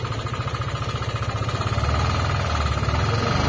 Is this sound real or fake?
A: real